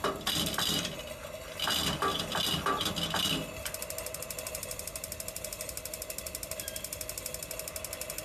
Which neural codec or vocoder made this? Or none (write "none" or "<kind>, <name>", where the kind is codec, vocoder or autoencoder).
none